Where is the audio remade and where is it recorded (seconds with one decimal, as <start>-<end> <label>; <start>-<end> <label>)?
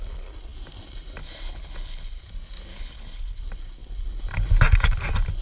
0.0-1.2 recorded; 1.2-2.2 remade; 2.2-2.7 recorded; 2.7-3.4 remade; 3.4-5.4 recorded